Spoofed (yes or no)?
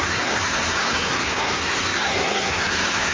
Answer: yes